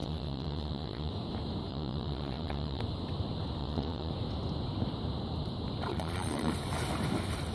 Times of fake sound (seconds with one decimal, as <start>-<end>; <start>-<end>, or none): 0.0-1.1; 1.7-2.8; 3.6-4.1; 5.9-6.5